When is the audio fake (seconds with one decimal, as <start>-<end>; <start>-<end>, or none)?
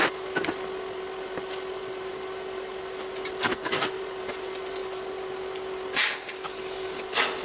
3.5-4.0